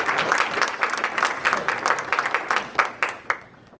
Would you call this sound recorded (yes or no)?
yes